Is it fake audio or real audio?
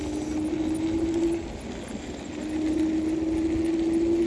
real